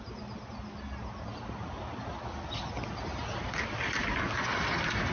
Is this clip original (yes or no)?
yes